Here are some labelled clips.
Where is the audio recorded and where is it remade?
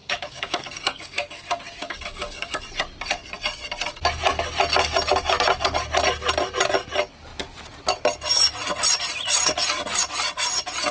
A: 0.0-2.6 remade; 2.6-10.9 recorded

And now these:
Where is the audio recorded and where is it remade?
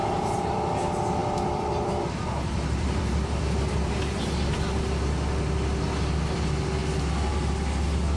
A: 0.0-0.6 remade; 0.6-1.2 recorded; 1.2-4.0 remade; 4.0-8.2 recorded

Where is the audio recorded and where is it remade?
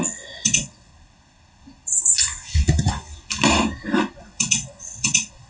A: 0.0-0.9 remade; 0.9-4.2 recorded; 4.2-5.5 remade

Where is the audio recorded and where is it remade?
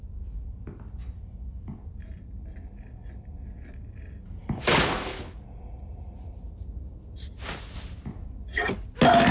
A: 0.0-9.3 recorded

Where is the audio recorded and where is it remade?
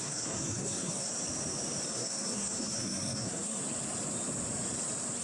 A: 0.0-1.1 remade; 1.1-1.9 recorded; 1.9-3.6 remade; 3.6-5.2 recorded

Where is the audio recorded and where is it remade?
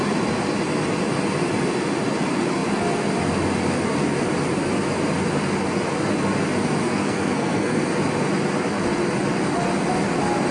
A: 0.0-6.8 recorded; 6.8-7.9 remade; 7.9-10.5 recorded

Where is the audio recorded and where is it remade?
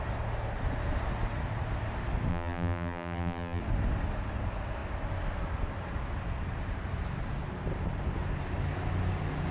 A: 0.0-2.3 recorded; 2.3-3.6 remade; 3.6-9.5 recorded